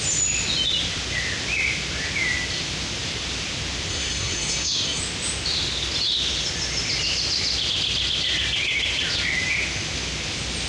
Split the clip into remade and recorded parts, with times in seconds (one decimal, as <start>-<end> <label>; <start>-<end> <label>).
0.0-3.9 recorded; 3.9-5.0 remade; 5.0-10.7 recorded